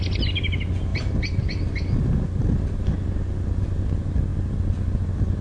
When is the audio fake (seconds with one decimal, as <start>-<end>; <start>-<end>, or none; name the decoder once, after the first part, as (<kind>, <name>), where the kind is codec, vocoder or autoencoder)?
none